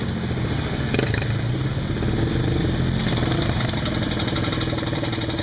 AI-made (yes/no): no